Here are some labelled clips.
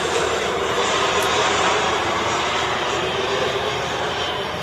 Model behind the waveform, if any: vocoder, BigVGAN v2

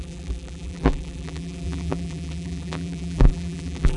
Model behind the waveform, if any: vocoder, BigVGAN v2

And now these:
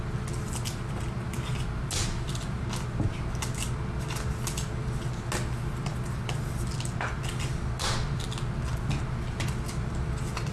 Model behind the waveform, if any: none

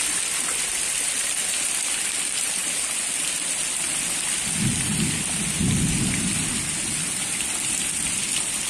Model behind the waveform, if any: none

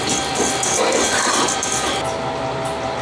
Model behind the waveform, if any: none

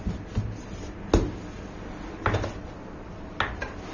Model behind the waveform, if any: none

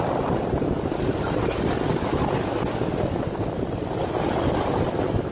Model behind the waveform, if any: none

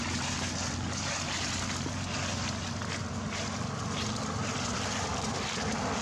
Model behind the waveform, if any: none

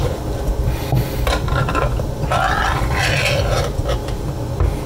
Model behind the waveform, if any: none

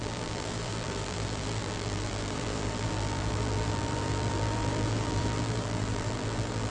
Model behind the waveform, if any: vocoder, BigVGAN v2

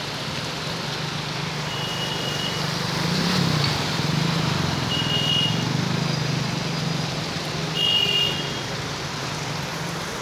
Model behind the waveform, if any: none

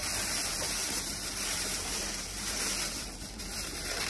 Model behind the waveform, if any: vocoder, BigVGAN v2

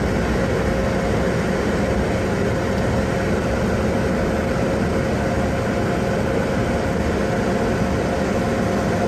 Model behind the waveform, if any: none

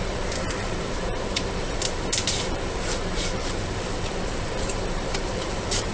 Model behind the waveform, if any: vocoder, BigVGAN v2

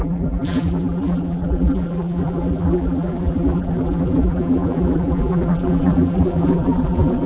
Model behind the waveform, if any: vocoder, BigVGAN v2